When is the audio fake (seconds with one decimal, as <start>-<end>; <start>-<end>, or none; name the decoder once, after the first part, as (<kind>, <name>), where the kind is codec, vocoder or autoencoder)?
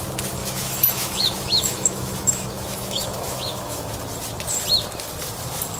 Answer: 0.4-3.9 (autoencoder, DAC-VAE)